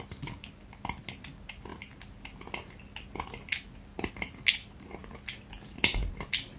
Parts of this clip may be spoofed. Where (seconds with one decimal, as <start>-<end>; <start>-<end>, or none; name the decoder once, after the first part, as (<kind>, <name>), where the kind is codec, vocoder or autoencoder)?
none